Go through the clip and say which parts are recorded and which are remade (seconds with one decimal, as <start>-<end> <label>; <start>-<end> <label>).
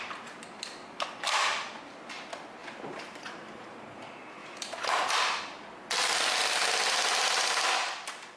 0.0-2.6 recorded; 2.6-3.8 remade; 3.8-4.4 recorded; 4.4-5.1 remade; 5.1-8.4 recorded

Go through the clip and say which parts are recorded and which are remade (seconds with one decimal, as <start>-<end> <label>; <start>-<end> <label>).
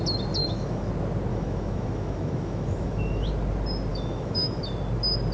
0.0-0.4 recorded; 0.4-0.9 remade; 0.9-1.3 recorded; 1.3-3.3 remade; 3.3-3.9 recorded; 3.9-4.6 remade; 4.6-5.3 recorded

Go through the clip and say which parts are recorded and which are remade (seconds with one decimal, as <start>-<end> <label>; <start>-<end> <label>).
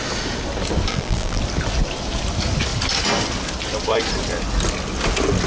0.0-0.9 recorded; 0.9-1.4 remade; 1.4-5.5 recorded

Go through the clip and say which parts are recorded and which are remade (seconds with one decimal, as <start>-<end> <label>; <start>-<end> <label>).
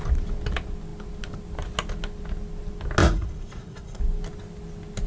0.0-3.0 recorded; 3.0-4.0 remade; 4.0-5.1 recorded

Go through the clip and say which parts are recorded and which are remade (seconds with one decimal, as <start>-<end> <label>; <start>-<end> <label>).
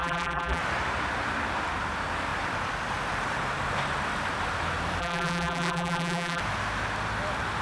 0.0-0.6 remade; 0.6-5.0 recorded; 5.0-6.4 remade; 6.4-7.6 recorded